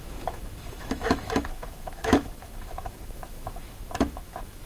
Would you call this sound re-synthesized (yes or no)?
yes